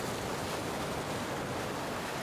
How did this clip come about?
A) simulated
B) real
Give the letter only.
B